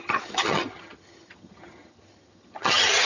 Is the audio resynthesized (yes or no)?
yes